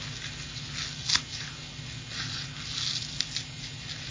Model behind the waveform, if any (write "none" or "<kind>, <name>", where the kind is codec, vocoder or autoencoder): none